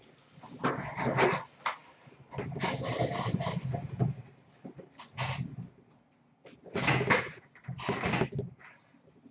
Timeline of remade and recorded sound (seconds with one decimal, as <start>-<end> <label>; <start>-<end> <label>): 0.0-9.3 recorded